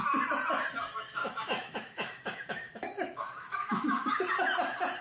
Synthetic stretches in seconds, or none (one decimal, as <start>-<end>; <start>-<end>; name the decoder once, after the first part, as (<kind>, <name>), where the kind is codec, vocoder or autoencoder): 1.2-4.1 (autoencoder, DAC-VAE)